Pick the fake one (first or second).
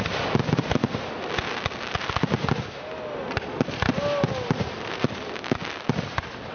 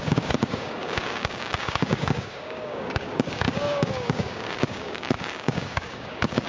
second